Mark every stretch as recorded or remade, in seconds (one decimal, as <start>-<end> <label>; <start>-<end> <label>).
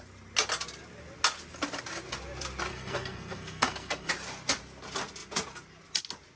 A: 0.0-2.7 recorded; 2.7-4.1 remade; 4.1-6.4 recorded